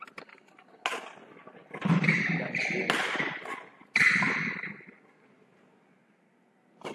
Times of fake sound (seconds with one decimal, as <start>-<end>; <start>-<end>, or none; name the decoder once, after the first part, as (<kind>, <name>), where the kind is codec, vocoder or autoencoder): none